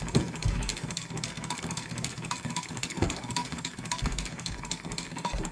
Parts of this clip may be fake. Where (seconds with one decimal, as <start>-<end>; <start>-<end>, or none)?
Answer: 0.0-5.5